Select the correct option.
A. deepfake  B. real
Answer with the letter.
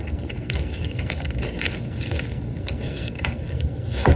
A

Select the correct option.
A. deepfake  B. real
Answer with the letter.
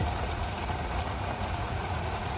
A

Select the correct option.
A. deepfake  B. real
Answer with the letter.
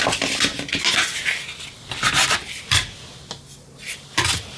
B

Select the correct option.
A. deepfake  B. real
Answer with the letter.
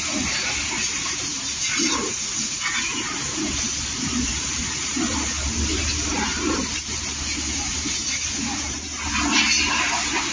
A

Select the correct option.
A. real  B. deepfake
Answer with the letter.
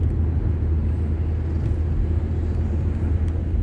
A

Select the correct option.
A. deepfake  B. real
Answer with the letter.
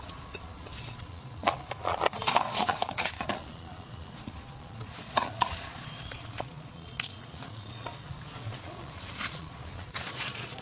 A